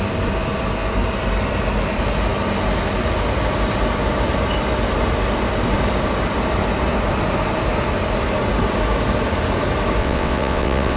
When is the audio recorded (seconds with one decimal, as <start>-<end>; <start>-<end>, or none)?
0.0-10.0